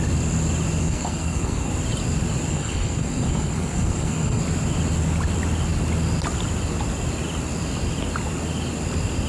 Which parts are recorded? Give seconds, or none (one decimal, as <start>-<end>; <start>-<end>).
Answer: 0.0-0.8; 1.7-2.5; 4.4-9.3

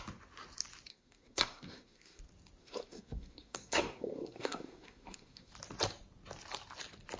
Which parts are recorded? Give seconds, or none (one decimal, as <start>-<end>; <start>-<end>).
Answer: 0.0-0.9; 2.2-2.6; 5.5-7.2

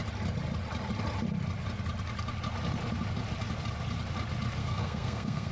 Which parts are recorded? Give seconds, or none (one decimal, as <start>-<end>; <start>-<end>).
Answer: 0.0-4.6

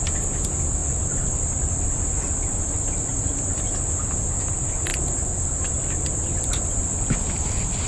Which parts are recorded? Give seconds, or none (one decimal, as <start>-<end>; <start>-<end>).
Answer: 0.0-7.9

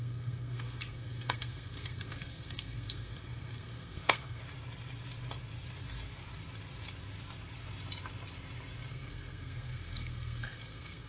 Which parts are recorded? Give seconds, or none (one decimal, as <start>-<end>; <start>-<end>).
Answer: 4.4-8.9